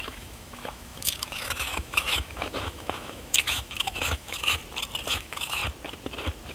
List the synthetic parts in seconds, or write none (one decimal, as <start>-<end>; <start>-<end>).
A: 0.0-4.6; 5.1-5.6

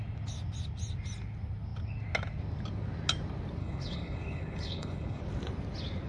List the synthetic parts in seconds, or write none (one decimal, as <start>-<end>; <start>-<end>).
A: 3.6-5.2

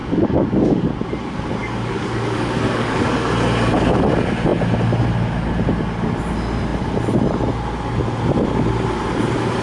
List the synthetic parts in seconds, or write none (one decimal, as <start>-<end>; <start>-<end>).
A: 0.0-0.9; 1.6-3.3

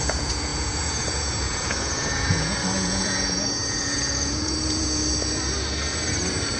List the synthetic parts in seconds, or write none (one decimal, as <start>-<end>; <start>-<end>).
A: 0.0-5.0

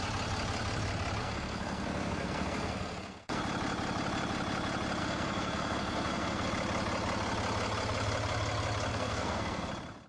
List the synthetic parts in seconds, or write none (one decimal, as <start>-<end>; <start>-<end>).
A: 1.2-3.4; 5.0-6.5; 8.9-9.7